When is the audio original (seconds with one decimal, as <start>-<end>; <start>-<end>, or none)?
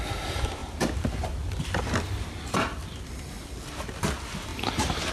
0.0-0.6; 3.7-4.5